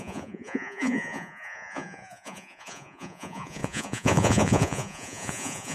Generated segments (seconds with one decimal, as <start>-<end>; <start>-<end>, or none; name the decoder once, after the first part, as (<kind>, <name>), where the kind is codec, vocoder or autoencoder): 0.0-5.7 (vocoder, Vocos)